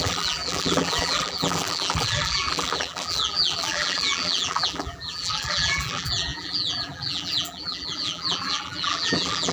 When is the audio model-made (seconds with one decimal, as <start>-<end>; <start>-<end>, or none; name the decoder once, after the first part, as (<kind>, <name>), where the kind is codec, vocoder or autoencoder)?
0.0-9.5 (vocoder, BigVGAN v2)